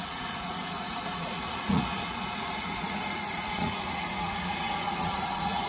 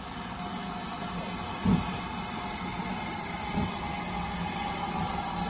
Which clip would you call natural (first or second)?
second